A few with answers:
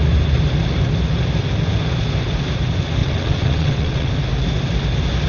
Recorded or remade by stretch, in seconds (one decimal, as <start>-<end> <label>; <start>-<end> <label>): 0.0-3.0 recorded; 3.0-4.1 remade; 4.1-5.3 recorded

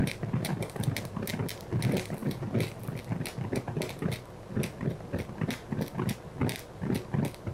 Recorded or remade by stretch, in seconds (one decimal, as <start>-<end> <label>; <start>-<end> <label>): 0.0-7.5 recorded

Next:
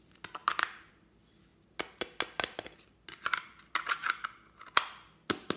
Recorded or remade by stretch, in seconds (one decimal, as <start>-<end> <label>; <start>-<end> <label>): 0.0-5.6 recorded

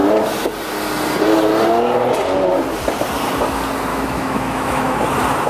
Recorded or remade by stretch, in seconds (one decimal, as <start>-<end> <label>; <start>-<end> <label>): 0.0-3.9 recorded; 3.9-5.0 remade; 5.0-5.5 recorded

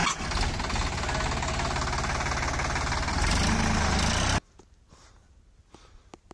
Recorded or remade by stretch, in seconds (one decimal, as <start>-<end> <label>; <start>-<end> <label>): 0.0-6.3 recorded

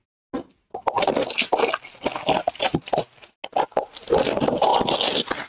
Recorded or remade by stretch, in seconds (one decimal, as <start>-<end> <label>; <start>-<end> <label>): 0.0-5.5 recorded